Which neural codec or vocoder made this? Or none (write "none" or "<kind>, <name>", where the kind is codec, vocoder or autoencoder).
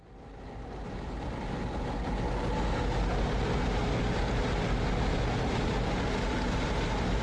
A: none